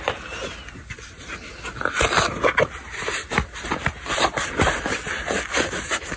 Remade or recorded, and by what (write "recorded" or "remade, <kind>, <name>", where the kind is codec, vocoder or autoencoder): recorded